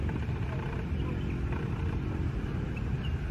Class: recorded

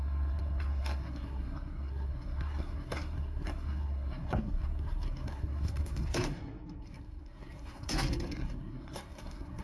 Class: remade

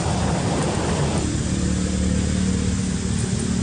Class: recorded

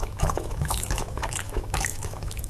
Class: remade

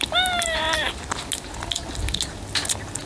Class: recorded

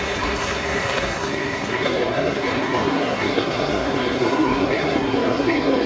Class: remade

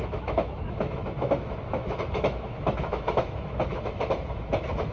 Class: remade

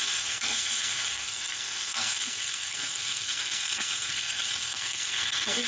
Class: remade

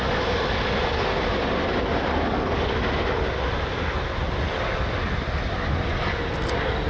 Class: recorded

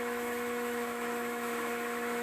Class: remade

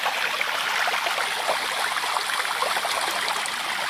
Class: recorded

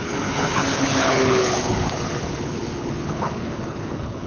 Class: remade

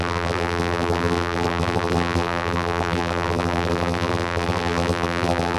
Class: remade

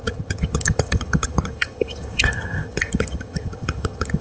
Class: remade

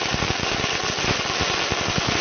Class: recorded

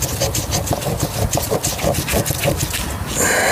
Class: recorded